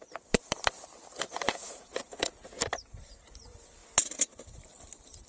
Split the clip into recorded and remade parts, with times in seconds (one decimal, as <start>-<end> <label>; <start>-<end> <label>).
0.0-1.5 recorded; 1.5-2.6 remade; 2.6-5.3 recorded